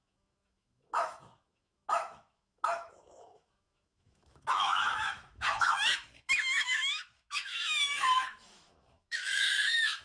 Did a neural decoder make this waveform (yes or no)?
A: yes